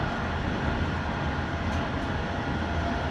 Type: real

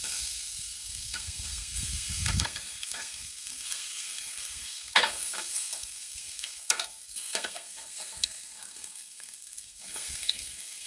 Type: fake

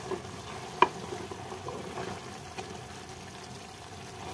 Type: real